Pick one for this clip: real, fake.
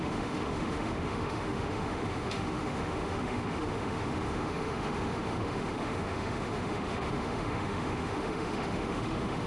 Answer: fake